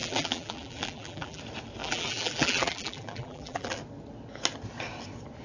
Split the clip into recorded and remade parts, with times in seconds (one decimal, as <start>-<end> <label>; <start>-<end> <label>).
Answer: 0.0-1.4 remade; 1.4-1.8 recorded; 1.8-3.8 remade; 3.8-5.4 recorded